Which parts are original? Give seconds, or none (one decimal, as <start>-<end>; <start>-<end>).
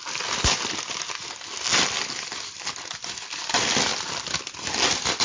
0.0-5.2